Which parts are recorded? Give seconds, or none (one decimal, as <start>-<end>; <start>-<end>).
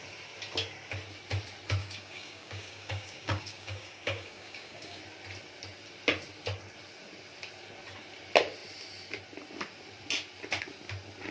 0.0-1.8; 5.0-11.3